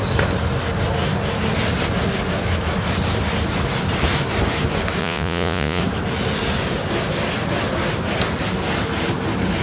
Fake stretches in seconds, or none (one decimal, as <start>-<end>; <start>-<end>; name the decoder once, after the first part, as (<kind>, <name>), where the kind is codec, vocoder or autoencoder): 5.0-5.8 (vocoder, Vocos)